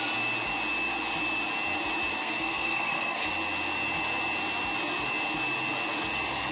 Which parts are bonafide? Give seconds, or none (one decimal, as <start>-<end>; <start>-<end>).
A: 0.0-2.1; 3.2-6.5